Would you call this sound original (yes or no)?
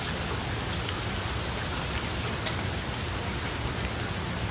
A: yes